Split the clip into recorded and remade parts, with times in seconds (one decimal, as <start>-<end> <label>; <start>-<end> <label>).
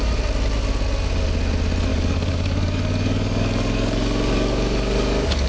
0.0-1.9 recorded; 1.9-5.5 remade